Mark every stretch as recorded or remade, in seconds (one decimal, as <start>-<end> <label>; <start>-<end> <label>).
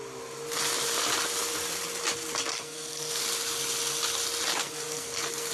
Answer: 0.0-2.5 recorded; 2.5-3.2 remade; 3.2-4.5 recorded; 4.5-5.5 remade